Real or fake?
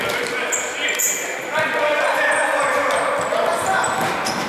real